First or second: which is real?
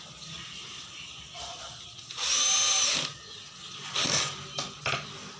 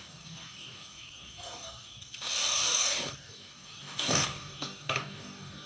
first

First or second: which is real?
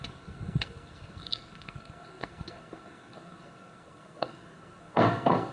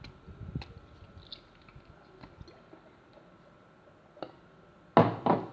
second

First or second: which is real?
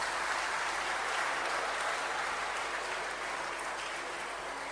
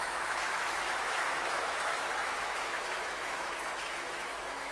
first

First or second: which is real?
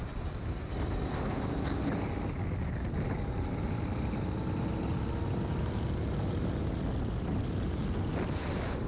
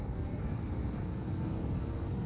first